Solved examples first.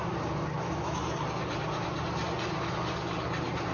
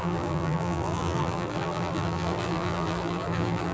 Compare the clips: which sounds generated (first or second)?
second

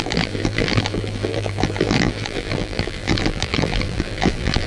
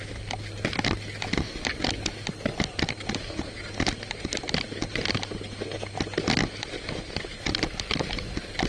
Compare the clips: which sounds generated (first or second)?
first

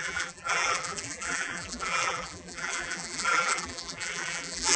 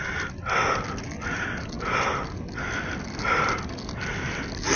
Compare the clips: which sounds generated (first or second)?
first